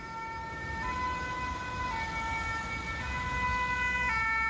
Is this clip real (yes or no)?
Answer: yes